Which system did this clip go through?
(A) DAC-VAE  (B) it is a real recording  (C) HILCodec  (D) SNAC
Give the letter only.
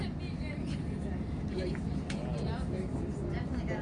B